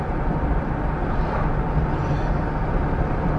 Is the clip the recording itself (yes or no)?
yes